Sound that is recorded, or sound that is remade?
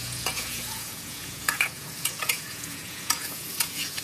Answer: remade